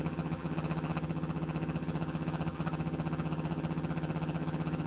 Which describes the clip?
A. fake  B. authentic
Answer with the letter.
A